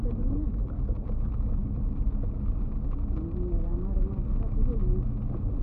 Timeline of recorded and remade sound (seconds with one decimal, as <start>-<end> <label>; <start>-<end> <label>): 0.0-0.4 recorded; 0.4-0.9 remade; 0.9-5.6 recorded